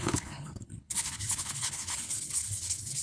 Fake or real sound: fake